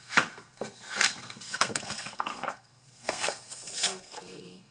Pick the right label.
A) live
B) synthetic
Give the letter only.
B